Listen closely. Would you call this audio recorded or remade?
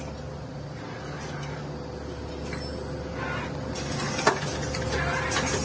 recorded